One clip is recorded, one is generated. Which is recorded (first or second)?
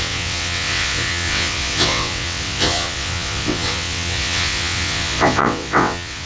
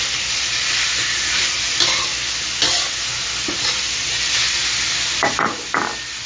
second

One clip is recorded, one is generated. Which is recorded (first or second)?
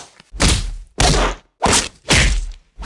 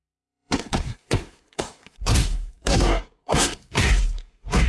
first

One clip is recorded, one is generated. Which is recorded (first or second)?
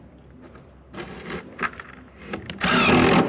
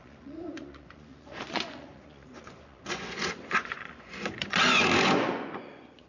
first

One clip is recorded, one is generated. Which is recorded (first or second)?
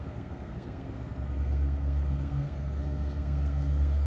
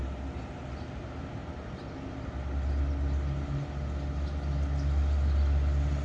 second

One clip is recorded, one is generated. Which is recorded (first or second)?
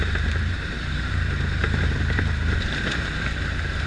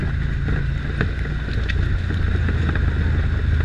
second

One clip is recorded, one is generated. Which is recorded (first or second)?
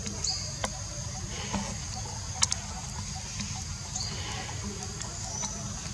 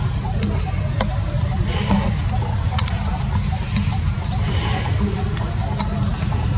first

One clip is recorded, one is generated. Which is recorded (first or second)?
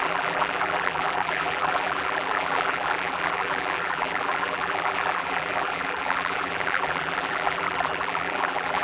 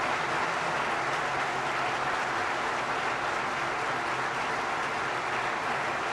second